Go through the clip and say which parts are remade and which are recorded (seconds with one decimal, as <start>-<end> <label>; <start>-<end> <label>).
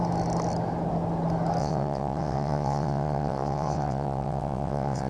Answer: 0.0-1.6 recorded; 1.6-5.1 remade